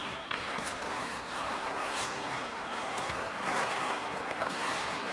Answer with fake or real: fake